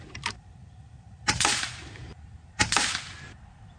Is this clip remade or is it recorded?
remade